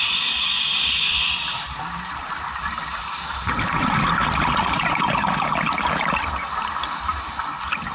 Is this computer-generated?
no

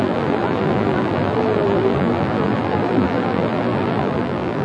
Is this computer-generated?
yes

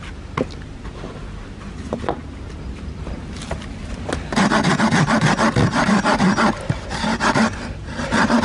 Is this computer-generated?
no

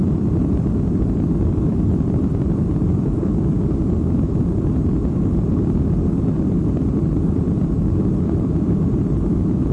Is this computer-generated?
yes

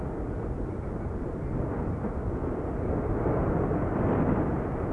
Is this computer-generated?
no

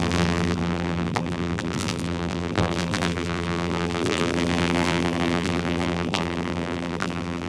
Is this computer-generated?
yes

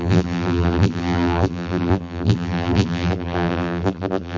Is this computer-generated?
yes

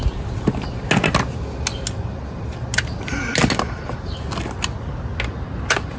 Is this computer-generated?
no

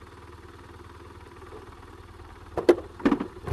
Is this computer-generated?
yes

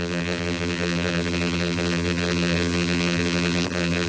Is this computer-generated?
yes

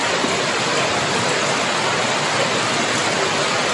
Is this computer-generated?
yes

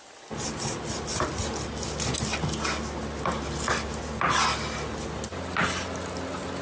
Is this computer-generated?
no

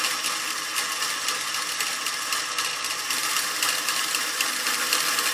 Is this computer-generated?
no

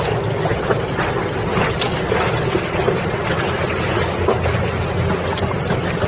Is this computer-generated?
no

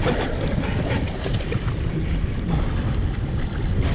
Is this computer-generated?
no